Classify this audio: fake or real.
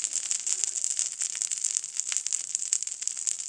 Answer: real